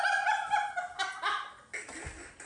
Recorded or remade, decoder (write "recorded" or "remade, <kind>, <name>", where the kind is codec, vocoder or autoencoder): recorded